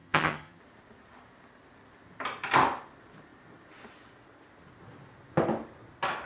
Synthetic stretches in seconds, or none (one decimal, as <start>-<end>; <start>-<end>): 0.0-0.6